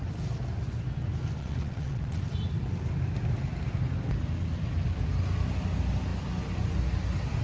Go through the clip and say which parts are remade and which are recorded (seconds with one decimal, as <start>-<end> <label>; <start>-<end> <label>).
0.0-1.4 recorded; 1.4-2.2 remade; 2.2-7.4 recorded